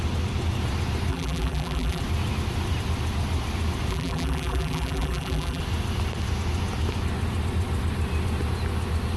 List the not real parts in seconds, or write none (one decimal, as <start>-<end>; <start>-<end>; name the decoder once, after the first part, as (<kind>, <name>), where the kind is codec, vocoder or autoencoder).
1.1-2.0 (vocoder, BigVGAN v2); 3.9-5.6